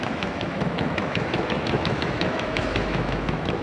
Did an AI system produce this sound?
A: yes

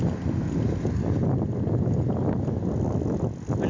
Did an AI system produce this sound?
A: no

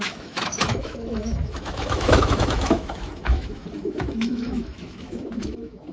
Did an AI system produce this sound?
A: yes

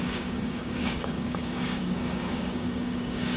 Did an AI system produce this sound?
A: yes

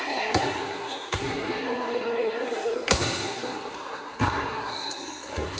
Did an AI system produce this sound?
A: yes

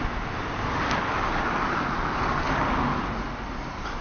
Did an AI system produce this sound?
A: no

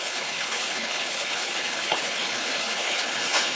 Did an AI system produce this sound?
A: yes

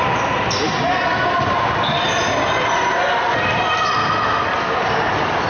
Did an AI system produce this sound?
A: no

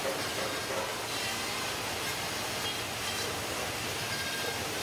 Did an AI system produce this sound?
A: no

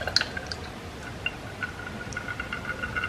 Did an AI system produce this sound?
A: no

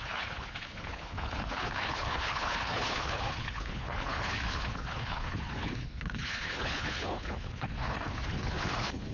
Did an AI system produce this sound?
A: yes